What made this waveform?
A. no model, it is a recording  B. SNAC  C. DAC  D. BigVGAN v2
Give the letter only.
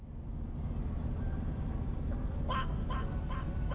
A